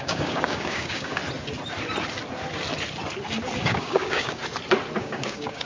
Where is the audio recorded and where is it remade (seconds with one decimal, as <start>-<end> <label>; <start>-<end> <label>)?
0.0-1.2 remade; 1.2-3.6 recorded; 3.6-4.4 remade; 4.4-5.0 recorded; 5.0-5.7 remade